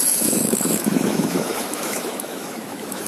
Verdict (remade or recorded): remade